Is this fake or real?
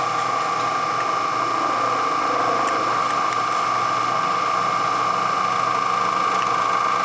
real